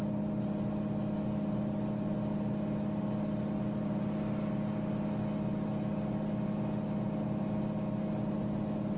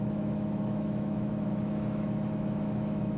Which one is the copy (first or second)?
second